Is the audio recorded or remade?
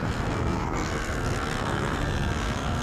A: remade